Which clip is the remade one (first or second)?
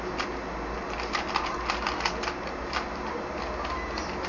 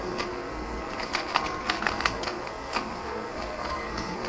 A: second